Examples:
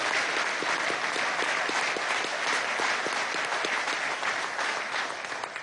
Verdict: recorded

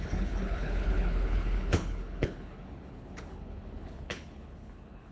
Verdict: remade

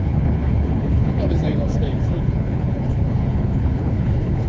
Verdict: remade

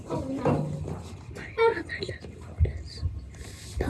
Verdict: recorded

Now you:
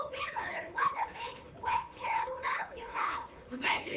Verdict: remade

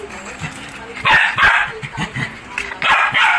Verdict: recorded